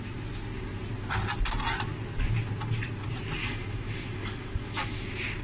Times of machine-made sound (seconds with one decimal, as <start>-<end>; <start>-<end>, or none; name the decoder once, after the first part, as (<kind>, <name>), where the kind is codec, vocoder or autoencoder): 3.4-5.0 (autoencoder, DAC-VAE)